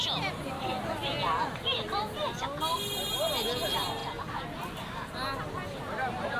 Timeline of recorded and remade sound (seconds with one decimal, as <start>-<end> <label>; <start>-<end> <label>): 0.0-6.4 recorded